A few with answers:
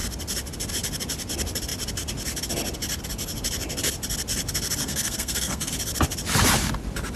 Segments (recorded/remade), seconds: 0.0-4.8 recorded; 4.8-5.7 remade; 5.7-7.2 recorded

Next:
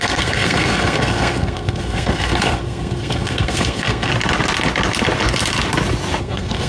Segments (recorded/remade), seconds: 0.0-4.1 remade; 4.1-6.2 recorded; 6.2-6.7 remade

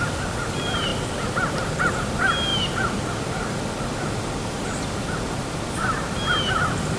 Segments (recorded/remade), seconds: 0.0-7.0 recorded

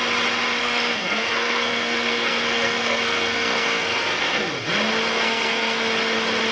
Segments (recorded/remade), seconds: 0.0-0.6 recorded; 0.6-4.5 remade; 4.5-5.1 recorded; 5.1-5.8 remade; 5.8-6.5 recorded

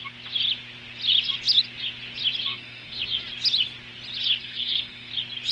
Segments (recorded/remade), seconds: 0.0-2.5 recorded; 2.5-3.0 remade; 3.0-4.4 recorded; 4.4-5.1 remade; 5.1-5.5 recorded

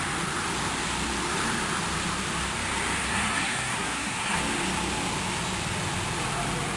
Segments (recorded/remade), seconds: 0.0-3.0 recorded; 3.0-4.4 remade; 4.4-6.8 recorded